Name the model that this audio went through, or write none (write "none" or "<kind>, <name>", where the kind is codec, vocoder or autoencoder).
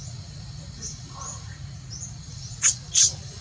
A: vocoder, Vocos